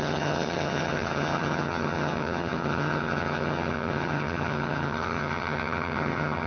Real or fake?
fake